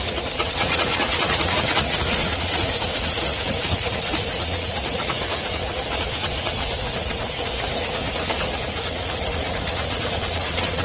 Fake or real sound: fake